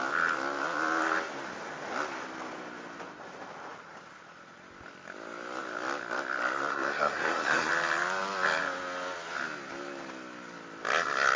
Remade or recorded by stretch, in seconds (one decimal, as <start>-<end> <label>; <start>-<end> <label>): 0.0-6.7 recorded; 6.7-7.7 remade; 7.7-11.4 recorded